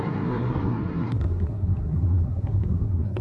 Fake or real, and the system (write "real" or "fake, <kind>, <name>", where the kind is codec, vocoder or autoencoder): fake, codec, SNAC